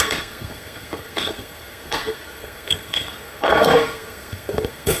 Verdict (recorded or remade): remade